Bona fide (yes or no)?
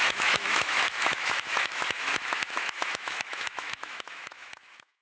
no